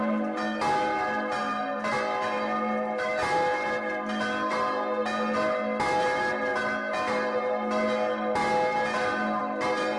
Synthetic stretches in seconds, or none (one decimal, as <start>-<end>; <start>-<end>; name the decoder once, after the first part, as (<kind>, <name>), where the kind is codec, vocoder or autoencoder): none